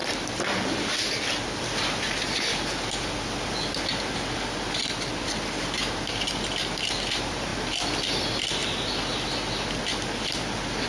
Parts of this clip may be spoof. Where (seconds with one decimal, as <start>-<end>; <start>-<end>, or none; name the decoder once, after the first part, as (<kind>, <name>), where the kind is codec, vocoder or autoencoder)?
none